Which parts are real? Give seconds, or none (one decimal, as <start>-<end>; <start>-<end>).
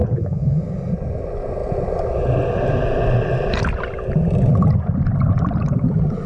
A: 0.6-6.3